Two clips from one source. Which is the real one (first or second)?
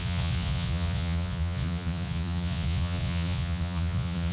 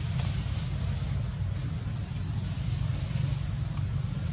second